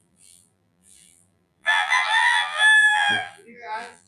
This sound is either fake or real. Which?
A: fake